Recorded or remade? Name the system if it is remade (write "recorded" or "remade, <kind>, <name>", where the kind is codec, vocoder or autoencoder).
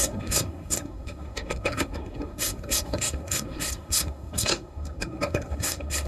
remade, codec, SNAC